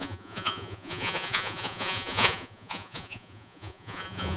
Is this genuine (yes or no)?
no